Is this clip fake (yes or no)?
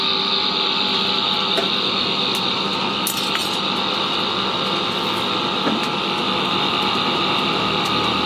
no